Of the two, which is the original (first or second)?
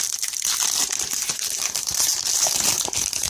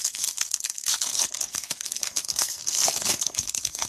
first